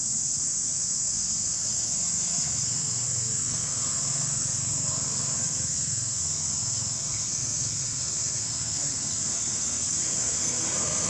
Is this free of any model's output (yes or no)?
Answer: no